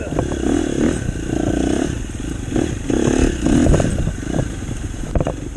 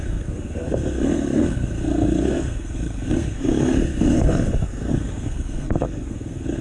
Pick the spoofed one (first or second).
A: second